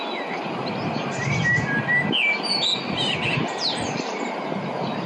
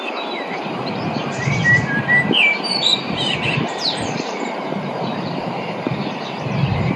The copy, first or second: second